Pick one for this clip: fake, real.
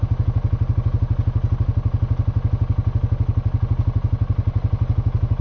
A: real